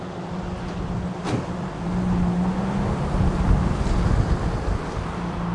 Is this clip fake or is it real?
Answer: real